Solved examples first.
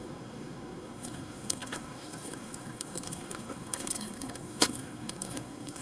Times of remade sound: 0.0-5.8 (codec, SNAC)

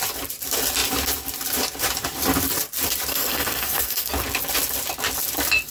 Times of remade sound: 3.1-4.1 (codec, SNAC)

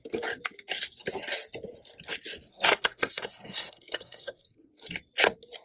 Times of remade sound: 2.5-4.7 (codec, SNAC)

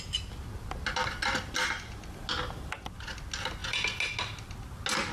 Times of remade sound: none